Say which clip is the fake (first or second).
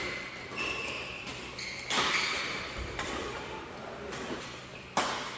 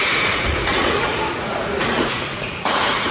second